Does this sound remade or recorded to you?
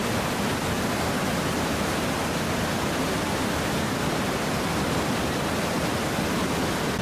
recorded